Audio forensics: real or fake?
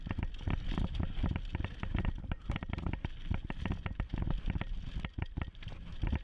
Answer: real